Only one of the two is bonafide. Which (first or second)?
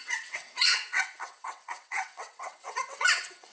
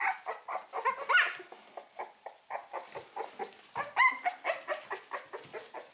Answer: second